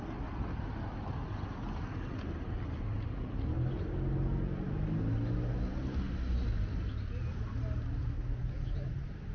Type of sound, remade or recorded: recorded